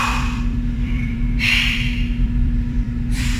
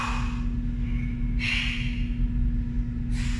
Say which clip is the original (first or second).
second